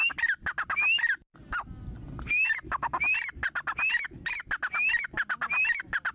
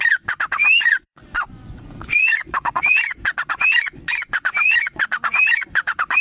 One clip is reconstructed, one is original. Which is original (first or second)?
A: first